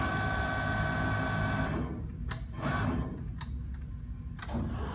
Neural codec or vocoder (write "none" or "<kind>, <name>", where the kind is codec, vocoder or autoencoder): none